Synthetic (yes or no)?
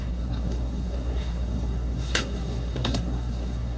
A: yes